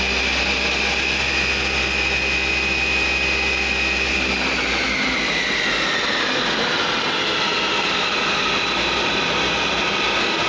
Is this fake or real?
real